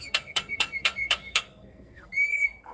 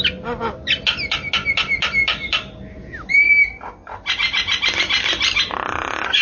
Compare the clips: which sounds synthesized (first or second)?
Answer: first